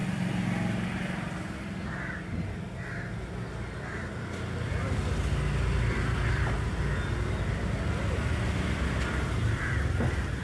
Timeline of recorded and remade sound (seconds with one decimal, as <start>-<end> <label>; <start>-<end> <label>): 0.0-10.4 recorded